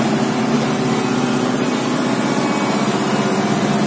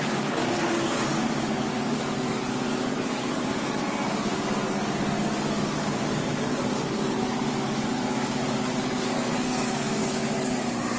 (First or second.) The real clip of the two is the first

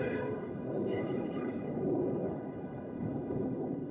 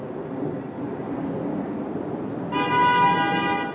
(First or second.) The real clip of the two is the second